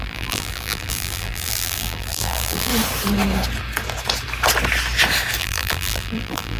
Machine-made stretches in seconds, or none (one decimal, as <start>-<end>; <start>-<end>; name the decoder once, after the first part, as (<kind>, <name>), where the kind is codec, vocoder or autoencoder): 0.0-2.7 (vocoder, BigVGAN v2); 5.4-6.6